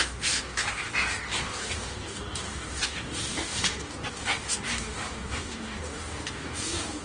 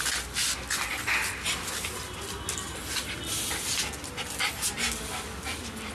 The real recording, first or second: second